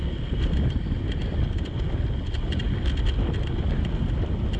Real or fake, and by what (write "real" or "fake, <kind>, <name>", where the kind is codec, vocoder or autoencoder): real